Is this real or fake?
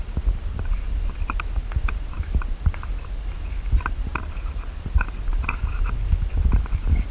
real